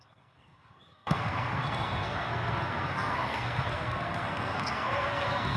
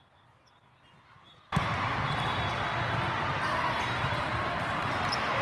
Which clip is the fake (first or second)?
first